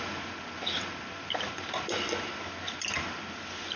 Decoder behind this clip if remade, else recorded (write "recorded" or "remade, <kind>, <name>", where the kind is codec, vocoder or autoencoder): recorded